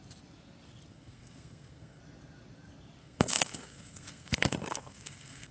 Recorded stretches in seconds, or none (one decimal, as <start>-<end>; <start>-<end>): 0.0-0.9; 2.0-3.0